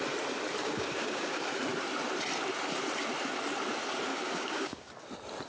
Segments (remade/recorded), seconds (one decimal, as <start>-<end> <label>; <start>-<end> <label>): 0.0-0.6 recorded; 0.6-1.4 remade; 1.4-4.1 recorded; 4.1-4.9 remade; 4.9-5.5 recorded